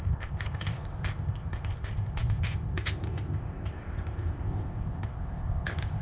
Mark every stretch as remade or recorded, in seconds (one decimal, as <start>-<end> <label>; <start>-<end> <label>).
0.0-6.0 remade